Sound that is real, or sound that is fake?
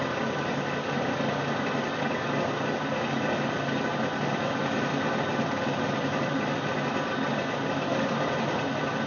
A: real